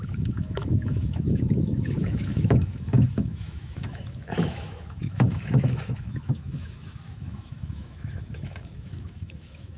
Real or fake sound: fake